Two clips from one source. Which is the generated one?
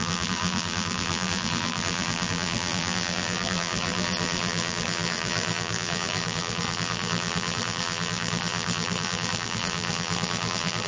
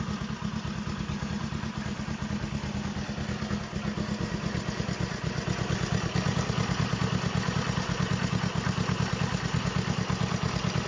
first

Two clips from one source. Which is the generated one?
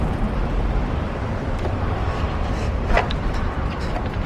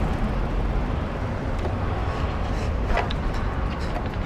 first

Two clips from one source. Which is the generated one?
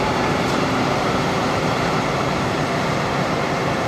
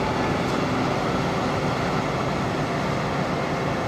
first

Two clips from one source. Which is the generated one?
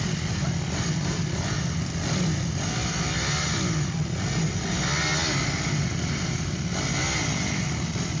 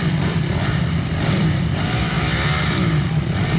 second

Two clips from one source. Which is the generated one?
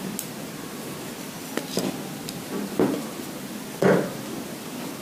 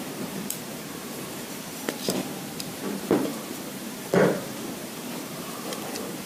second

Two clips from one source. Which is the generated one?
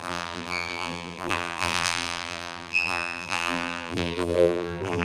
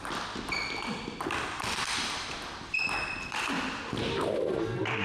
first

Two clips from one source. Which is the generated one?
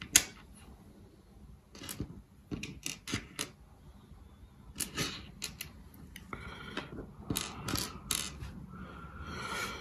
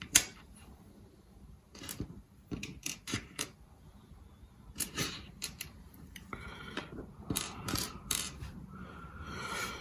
second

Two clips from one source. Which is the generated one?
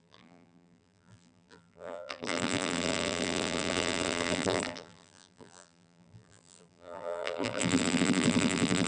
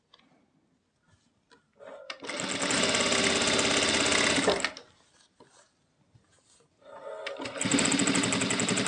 first